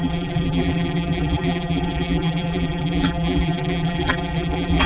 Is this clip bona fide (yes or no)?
no